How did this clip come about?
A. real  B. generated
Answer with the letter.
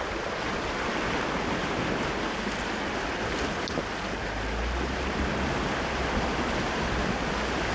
A